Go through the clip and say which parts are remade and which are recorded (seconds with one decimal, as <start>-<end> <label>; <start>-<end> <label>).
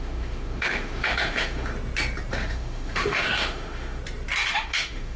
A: 0.0-1.7 remade; 1.7-2.3 recorded; 2.3-4.0 remade; 4.0-4.5 recorded; 4.5-5.2 remade